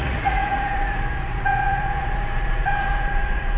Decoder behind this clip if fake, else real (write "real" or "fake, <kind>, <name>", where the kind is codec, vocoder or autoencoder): fake, vocoder, Vocos